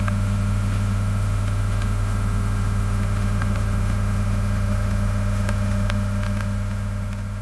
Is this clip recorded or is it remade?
remade